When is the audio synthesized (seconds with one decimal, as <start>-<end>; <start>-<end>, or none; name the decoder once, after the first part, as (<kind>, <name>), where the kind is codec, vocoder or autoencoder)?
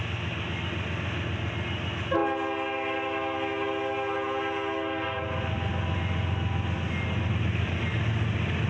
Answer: none